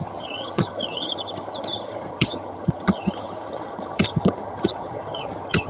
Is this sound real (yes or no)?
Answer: no